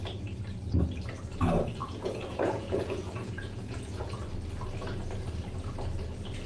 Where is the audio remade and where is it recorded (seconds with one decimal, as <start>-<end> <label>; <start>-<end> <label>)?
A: 0.0-1.8 recorded; 1.8-4.0 remade; 4.0-6.5 recorded